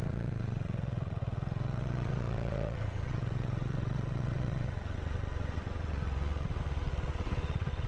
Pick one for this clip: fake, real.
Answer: fake